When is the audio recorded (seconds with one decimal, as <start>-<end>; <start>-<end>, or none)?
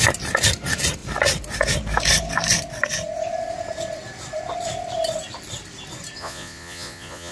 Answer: 0.0-6.2